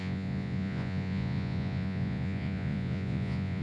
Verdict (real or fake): fake